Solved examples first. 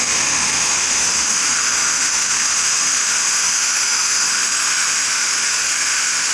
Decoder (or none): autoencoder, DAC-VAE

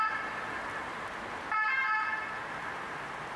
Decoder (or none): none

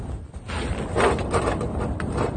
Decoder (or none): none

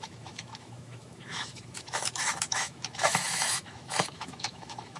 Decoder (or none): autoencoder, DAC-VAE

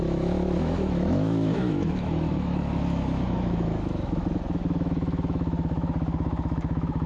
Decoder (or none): autoencoder, DAC-VAE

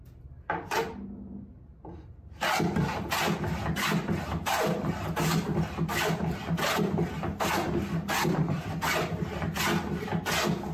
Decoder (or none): none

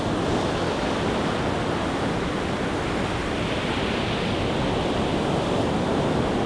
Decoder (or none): none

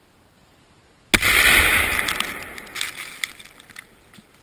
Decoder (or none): none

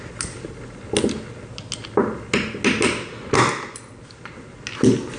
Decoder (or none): none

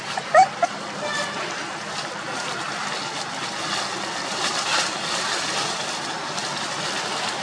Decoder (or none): none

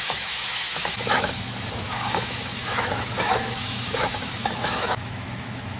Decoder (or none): autoencoder, DAC-VAE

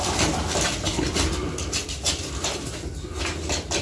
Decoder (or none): none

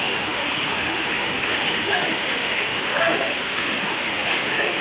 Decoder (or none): autoencoder, DAC-VAE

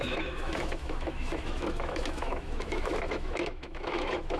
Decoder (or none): autoencoder, DAC-VAE